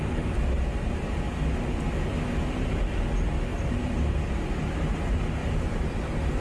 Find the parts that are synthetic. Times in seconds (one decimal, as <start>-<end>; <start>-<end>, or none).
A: 3.5-4.2